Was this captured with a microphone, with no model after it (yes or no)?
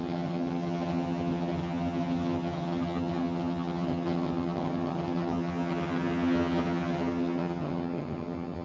no